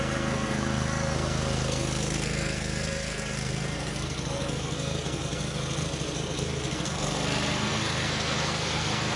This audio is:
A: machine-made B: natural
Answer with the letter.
A